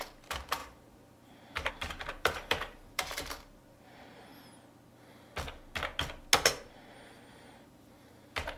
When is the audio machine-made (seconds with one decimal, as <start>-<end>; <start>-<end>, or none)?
0.0-4.3; 7.3-8.6